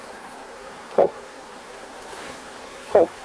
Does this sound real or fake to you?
fake